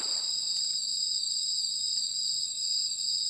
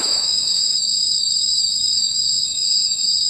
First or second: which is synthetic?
second